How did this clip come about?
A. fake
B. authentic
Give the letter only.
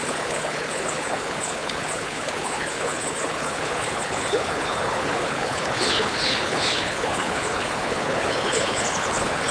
A